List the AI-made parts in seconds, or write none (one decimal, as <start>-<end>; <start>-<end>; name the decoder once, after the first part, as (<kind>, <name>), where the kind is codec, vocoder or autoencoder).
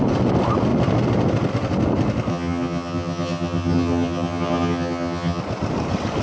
2.3-5.4 (vocoder, HiFi-GAN)